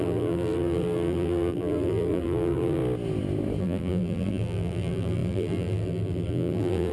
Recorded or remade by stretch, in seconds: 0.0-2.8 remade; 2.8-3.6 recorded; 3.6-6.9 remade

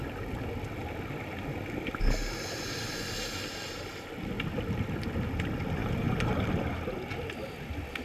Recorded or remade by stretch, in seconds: 0.0-5.8 recorded; 5.8-6.5 remade; 6.5-8.0 recorded